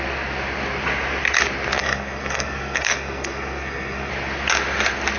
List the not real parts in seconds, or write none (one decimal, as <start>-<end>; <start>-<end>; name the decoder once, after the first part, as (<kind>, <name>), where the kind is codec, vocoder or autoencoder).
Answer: 1.8-4.1 (codec, SNAC)